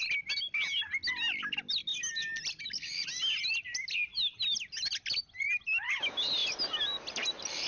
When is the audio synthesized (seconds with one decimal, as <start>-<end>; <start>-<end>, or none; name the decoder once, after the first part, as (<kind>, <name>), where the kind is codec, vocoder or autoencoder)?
none